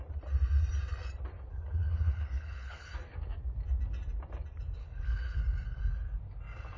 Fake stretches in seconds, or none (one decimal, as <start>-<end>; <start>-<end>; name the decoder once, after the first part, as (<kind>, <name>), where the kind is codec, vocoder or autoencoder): 1.5-2.9 (codec, HILCodec); 4.8-5.4